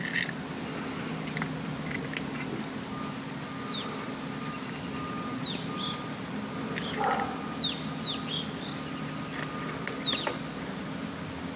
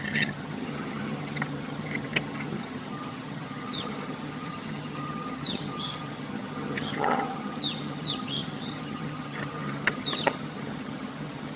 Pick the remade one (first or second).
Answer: second